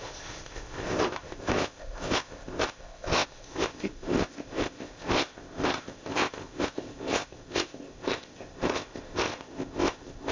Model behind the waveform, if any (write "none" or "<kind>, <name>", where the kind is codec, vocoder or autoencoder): codec, ZipCodec